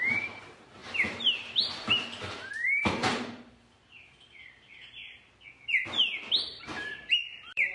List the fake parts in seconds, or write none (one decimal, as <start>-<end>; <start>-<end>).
0.0-5.0; 6.6-7.7